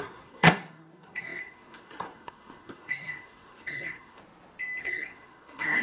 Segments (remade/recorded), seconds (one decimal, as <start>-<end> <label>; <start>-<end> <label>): 0.0-4.2 remade; 4.2-4.8 recorded; 4.8-5.8 remade